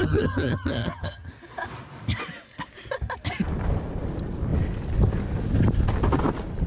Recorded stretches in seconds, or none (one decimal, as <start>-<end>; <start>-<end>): 1.3-6.7